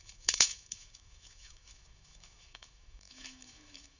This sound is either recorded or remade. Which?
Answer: remade